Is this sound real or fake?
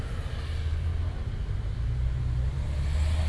real